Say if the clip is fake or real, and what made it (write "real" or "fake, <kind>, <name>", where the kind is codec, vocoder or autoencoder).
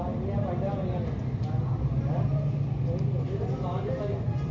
real